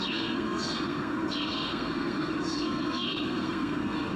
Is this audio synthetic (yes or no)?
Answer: yes